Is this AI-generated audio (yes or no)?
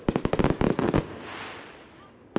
no